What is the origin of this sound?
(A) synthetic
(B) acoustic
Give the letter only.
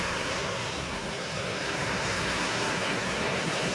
A